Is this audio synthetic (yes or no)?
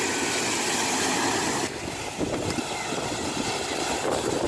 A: no